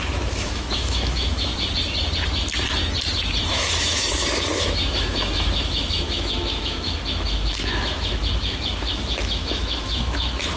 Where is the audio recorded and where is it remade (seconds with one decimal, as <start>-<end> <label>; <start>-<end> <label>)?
0.0-1.5 remade; 1.5-3.5 recorded; 3.5-10.6 remade